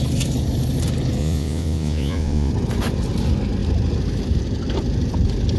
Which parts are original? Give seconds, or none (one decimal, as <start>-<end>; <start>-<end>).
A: 0.0-1.2; 2.5-5.6